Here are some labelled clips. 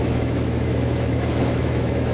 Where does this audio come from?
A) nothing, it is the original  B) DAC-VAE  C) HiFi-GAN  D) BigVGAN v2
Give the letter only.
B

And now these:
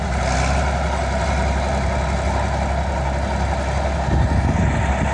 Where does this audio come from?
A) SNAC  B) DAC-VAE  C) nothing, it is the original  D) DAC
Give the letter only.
C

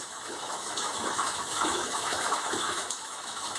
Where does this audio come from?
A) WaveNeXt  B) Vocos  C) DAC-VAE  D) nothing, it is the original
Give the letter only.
C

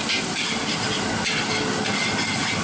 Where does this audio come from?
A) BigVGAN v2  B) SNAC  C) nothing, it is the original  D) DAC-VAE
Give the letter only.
C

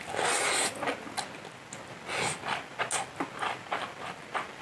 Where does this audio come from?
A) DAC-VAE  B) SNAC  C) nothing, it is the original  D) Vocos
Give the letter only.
C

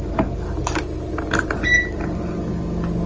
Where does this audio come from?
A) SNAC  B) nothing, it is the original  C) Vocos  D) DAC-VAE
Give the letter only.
B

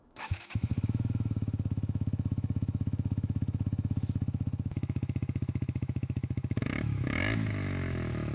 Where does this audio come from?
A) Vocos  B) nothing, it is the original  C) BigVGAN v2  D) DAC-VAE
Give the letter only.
D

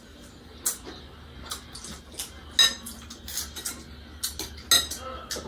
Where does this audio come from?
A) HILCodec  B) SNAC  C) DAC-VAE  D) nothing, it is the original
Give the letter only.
D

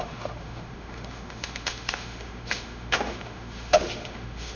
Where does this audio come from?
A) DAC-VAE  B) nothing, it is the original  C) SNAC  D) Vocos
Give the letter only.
A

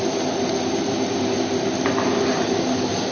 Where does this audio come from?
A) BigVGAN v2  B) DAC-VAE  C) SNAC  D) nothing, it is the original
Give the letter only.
D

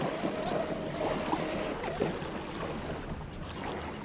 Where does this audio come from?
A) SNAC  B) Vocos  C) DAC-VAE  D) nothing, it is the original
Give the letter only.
D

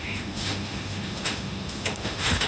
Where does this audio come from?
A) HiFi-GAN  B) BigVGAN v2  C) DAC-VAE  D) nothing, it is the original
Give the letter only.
C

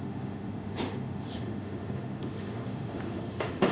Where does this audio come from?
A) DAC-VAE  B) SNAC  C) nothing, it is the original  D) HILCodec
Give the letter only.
A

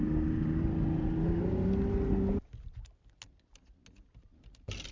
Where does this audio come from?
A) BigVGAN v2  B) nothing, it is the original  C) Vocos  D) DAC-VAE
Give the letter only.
B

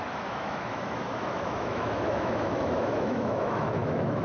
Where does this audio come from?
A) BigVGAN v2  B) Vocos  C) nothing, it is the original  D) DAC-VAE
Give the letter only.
D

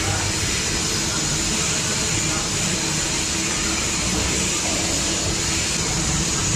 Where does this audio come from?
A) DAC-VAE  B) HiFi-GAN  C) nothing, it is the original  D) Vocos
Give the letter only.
C